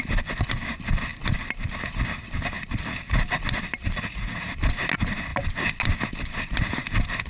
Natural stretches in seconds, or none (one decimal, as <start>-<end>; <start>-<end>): 0.0-3.8; 4.5-7.3